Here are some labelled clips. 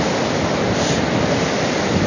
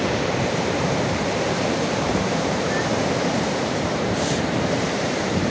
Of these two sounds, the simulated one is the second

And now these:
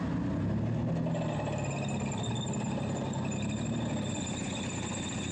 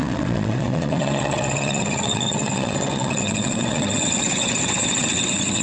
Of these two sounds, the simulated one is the second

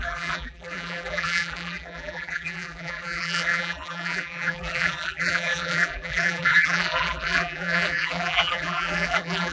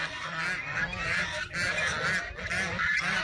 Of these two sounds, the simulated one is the first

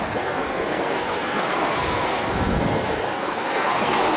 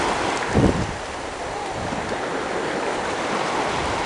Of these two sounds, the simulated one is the first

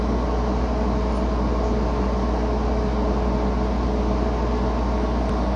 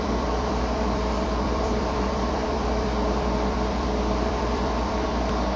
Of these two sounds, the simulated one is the second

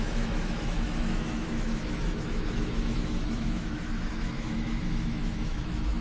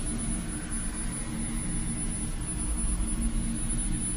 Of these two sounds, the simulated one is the first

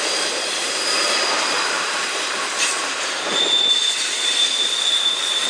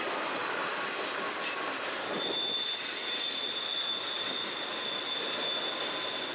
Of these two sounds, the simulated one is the first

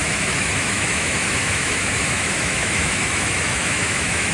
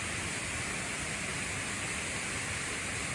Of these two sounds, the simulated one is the first